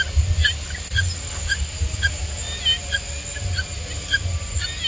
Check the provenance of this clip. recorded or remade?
recorded